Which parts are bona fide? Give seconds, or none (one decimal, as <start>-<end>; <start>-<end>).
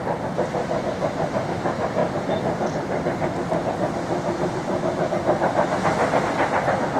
0.0-7.0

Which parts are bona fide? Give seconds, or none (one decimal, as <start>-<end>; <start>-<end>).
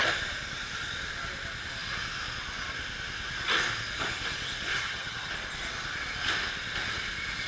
0.0-4.7; 5.3-7.5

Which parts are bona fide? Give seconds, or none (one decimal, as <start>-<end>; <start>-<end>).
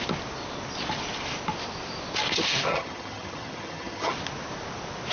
0.0-2.7; 4.1-5.1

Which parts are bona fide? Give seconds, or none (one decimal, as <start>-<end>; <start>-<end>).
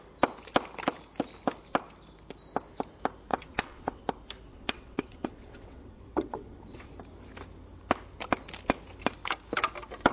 0.0-3.3; 4.0-4.5; 6.9-10.1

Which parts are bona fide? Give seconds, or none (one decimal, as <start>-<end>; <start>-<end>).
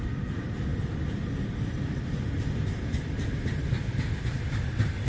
0.0-5.1